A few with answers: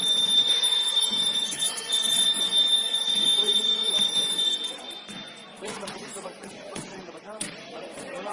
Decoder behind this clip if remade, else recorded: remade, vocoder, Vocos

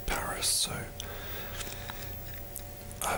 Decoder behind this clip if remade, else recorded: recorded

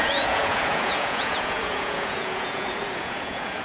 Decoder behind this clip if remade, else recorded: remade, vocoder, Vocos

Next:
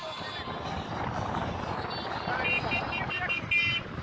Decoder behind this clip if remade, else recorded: recorded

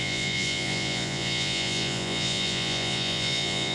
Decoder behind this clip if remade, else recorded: remade, vocoder, Vocos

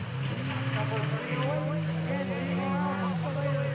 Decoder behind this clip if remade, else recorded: recorded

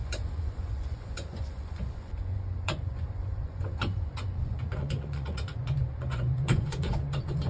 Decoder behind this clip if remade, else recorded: remade, vocoder, Vocos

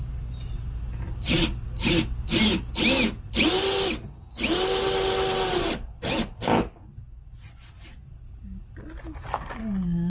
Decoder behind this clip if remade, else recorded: recorded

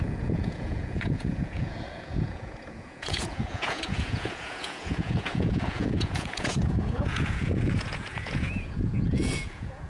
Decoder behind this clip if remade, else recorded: remade, vocoder, Vocos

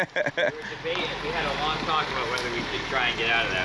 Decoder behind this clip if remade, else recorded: recorded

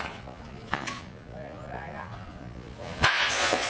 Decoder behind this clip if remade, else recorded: remade, vocoder, Vocos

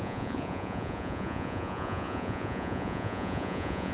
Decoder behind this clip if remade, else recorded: remade, vocoder, Vocos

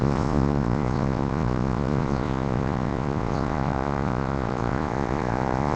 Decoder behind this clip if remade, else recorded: remade, vocoder, Vocos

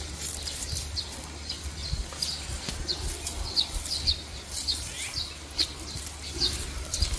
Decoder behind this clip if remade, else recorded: recorded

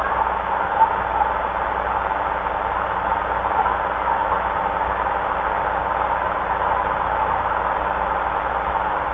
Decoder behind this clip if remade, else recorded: recorded